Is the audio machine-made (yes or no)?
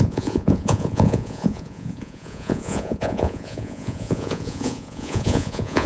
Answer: yes